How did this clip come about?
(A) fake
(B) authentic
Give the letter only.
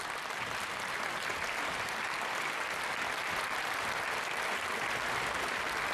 B